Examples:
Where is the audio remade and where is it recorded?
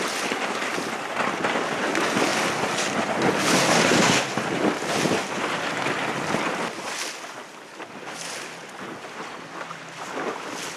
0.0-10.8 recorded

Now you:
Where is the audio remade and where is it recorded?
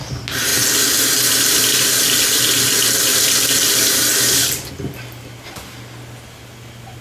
0.0-7.0 recorded